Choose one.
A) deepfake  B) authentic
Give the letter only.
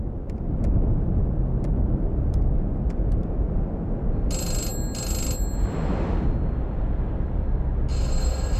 B